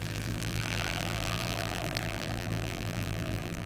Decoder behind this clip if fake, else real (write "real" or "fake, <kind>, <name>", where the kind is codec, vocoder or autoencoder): fake, vocoder, BigVGAN v2